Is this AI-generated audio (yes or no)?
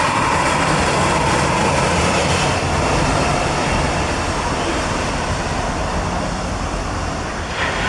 yes